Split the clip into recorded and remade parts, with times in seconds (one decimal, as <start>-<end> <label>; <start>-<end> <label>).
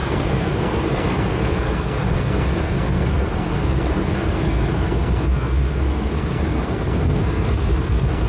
0.0-8.3 remade